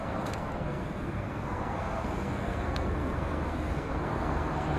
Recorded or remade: remade